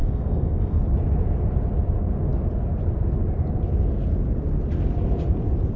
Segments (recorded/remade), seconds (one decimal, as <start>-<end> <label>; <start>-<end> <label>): 0.0-0.8 remade; 0.8-5.8 recorded